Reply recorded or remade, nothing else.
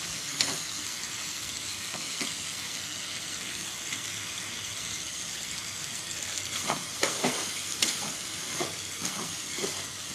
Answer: remade